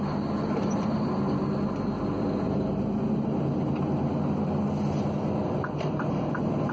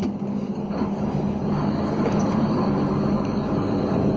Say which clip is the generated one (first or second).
second